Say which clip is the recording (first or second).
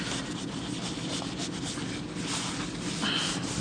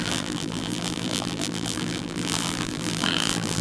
first